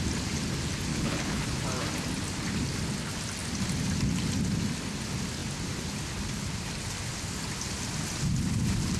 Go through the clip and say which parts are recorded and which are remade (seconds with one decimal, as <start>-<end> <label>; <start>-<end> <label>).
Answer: 0.0-0.9 recorded; 0.9-1.6 remade; 1.6-9.0 recorded